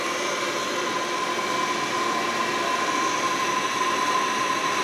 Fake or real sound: real